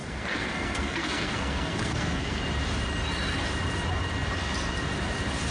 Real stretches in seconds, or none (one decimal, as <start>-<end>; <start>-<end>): 2.4-5.5